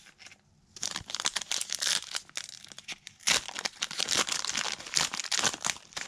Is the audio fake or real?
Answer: real